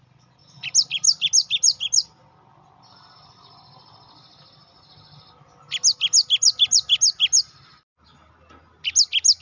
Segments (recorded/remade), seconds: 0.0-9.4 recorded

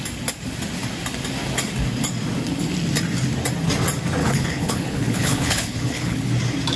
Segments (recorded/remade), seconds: 0.0-4.2 recorded; 4.2-6.3 remade; 6.3-6.8 recorded